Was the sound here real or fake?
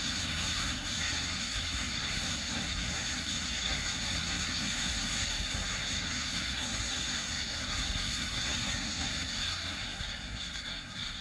fake